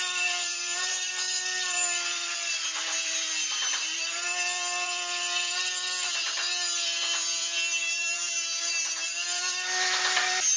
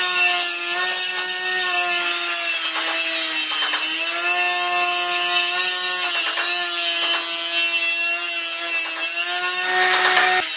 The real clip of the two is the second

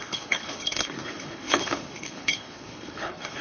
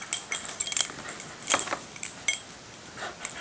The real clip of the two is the second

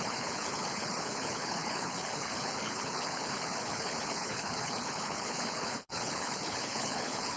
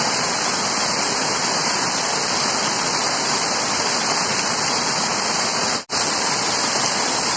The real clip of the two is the second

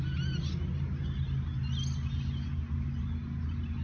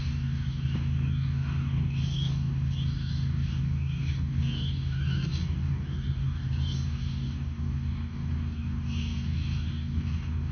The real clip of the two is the first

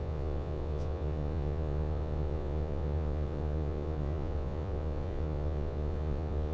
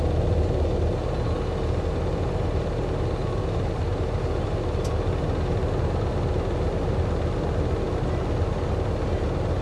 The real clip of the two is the second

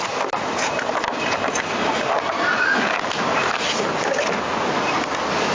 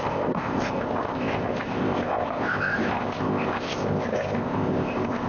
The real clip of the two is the first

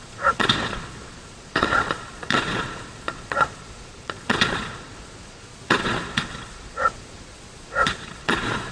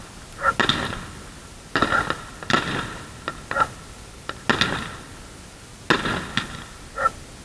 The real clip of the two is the second